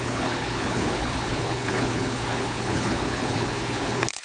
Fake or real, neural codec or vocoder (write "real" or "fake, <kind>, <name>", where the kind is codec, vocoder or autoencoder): fake, codec, HILCodec